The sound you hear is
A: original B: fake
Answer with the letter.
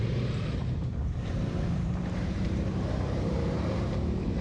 B